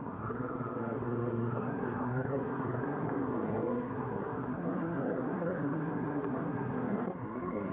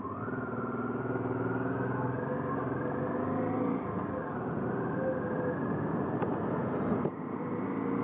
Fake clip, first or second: first